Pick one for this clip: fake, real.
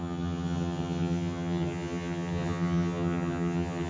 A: fake